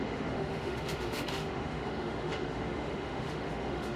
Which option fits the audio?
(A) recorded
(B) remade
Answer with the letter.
B